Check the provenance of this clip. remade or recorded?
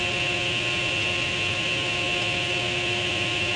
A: recorded